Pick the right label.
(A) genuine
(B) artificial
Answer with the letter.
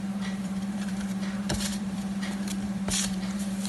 B